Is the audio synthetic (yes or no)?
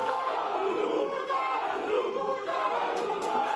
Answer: yes